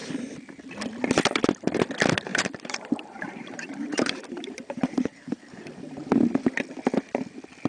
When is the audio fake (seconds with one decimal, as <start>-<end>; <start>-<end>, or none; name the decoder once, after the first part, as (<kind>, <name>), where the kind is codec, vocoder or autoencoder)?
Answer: 2.3-6.1 (vocoder, BigVGAN v2)